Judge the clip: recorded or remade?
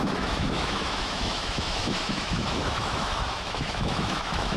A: remade